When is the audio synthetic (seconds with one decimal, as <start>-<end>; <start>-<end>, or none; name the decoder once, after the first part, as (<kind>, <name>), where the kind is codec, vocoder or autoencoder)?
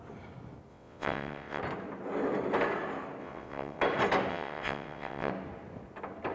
0.7-1.6 (vocoder, WaveNeXt); 3.2-3.8; 4.3-5.3